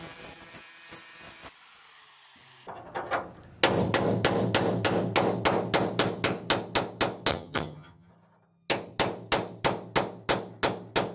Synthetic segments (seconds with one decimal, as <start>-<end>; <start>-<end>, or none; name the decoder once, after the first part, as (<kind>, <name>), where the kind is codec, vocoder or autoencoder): 7.3-8.1 (vocoder, HiFi-GAN)